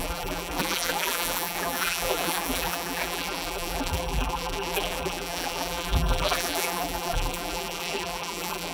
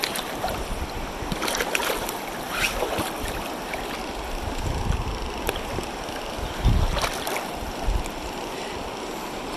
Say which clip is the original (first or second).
second